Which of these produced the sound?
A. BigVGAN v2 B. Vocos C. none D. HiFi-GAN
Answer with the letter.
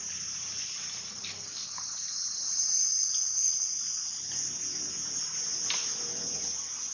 C